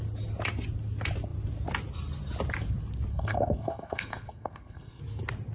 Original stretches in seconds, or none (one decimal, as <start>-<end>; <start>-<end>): 0.0-3.1; 5.0-5.5